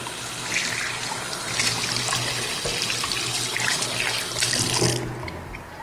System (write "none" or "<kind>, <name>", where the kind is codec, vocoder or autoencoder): none